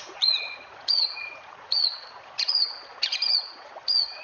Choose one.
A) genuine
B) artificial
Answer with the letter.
B